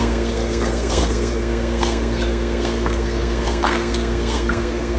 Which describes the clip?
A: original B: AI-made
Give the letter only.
B